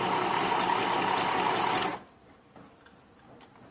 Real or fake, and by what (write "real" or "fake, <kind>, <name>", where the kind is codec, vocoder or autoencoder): real